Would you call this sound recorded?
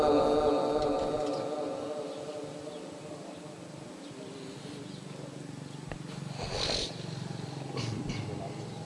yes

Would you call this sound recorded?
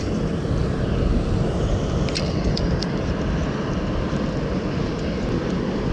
yes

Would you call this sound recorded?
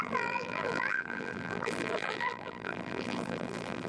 no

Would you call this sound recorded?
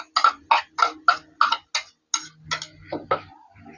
yes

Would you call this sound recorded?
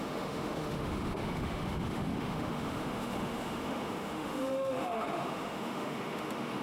no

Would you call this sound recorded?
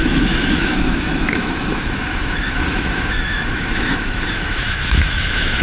no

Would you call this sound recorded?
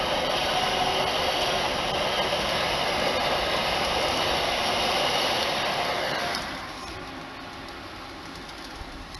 yes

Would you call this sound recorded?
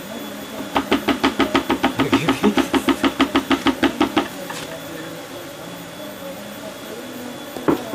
yes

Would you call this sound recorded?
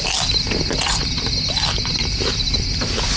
yes